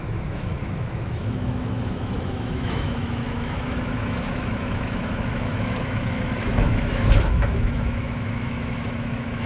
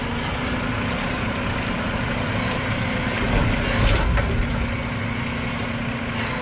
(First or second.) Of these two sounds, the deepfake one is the first